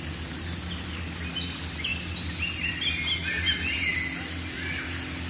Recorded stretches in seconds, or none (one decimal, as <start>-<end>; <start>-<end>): 0.0-5.3